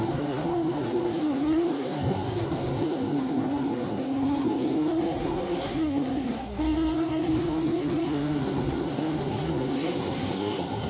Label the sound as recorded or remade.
remade